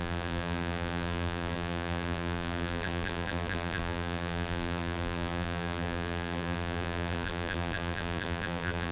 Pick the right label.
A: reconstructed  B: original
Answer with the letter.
A